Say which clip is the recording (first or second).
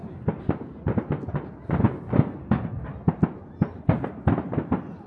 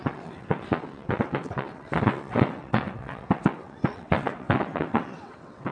first